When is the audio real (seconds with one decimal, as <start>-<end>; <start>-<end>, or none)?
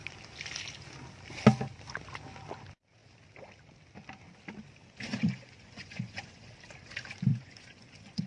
0.0-5.1; 6.5-7.3